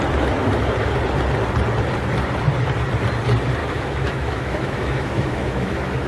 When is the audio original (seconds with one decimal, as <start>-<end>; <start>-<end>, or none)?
0.0-3.6